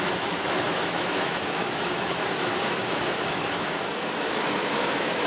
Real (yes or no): no